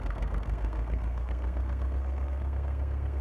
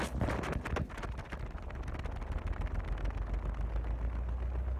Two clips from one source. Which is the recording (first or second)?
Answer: second